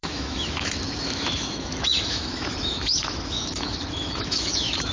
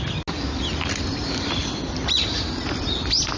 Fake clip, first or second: first